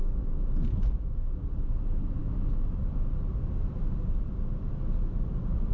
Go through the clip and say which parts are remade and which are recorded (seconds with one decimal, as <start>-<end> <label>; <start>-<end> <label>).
0.0-5.7 recorded